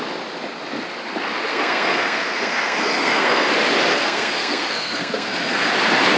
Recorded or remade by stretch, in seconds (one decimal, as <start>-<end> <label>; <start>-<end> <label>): 0.0-1.5 recorded; 1.5-3.5 remade; 3.5-3.9 recorded; 3.9-5.7 remade; 5.7-6.2 recorded